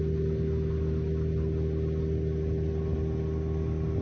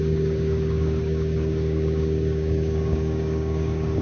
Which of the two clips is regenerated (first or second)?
second